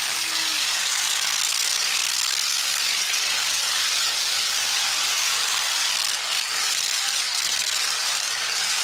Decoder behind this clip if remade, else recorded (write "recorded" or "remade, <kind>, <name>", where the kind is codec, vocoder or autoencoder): remade, codec, DAC